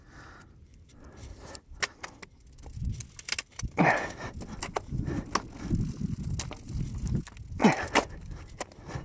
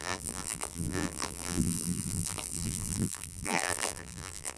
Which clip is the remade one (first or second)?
second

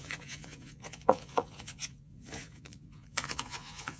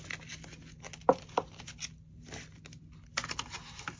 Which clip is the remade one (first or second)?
first